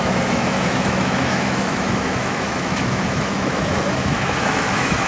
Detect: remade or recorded remade